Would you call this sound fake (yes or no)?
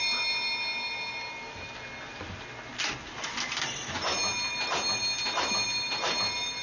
no